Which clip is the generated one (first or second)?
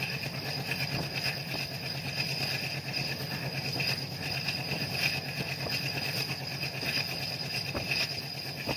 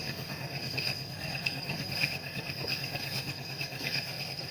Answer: second